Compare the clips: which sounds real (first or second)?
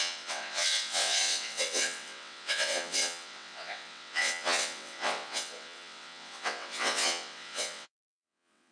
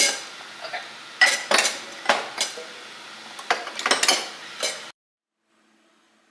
second